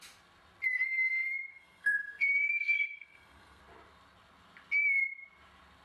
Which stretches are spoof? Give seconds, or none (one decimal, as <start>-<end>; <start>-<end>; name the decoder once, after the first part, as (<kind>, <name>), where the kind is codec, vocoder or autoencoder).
1.5-3.6 (codec, SNAC)